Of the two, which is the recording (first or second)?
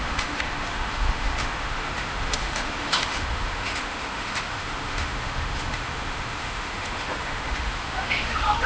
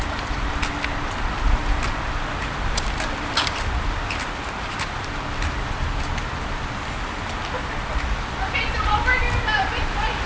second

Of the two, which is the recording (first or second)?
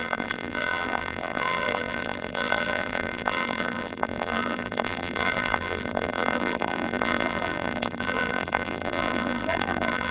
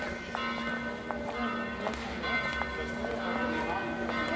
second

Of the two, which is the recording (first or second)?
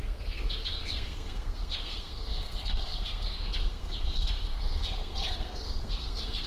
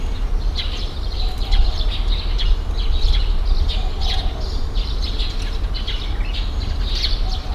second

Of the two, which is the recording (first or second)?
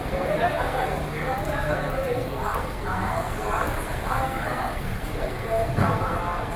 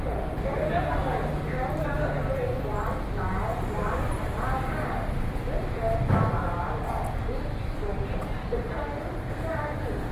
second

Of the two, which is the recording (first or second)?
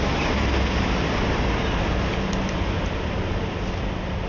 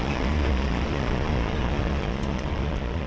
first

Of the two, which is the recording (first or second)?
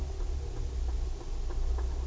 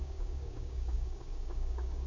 first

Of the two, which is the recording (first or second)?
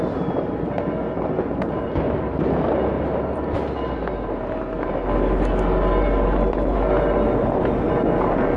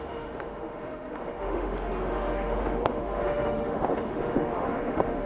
first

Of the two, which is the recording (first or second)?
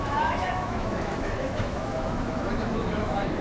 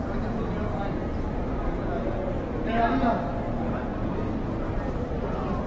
second